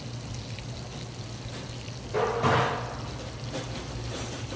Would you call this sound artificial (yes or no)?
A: no